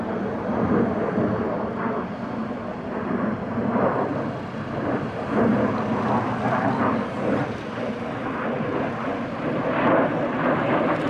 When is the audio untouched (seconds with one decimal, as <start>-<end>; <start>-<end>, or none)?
0.0-11.1